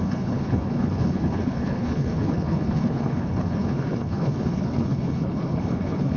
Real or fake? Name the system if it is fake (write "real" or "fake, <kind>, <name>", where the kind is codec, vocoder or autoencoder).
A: fake, codec, HILCodec